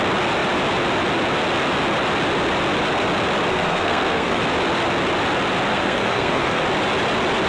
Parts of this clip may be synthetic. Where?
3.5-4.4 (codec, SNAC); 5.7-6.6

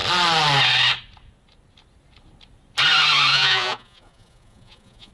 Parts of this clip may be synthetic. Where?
3.3-5.1 (vocoder, Vocos)

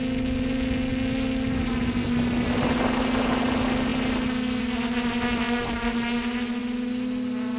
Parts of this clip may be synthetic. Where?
none

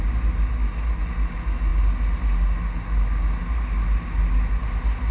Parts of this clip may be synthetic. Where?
none